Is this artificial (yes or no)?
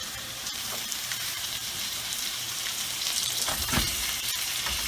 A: yes